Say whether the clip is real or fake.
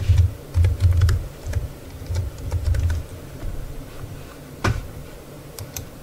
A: fake